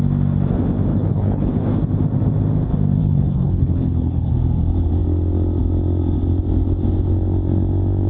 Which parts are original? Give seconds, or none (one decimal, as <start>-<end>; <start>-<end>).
0.0-0.9; 1.5-3.0; 4.3-8.1